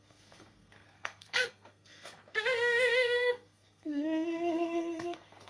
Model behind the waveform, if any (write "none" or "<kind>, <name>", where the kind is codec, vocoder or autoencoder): codec, SNAC